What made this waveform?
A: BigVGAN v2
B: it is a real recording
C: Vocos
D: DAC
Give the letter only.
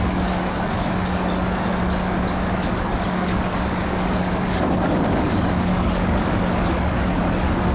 D